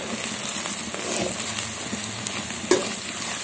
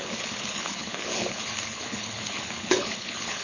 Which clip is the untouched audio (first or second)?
first